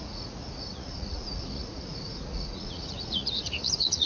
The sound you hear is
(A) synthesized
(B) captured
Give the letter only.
A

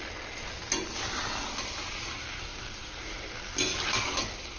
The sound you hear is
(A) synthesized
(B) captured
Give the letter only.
B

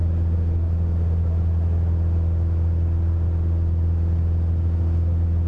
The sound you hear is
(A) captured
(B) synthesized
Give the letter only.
A